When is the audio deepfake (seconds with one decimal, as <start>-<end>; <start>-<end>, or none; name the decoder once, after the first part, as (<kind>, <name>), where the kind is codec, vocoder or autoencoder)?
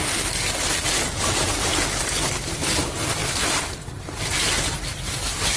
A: 3.2-3.7 (vocoder, BigVGAN v2)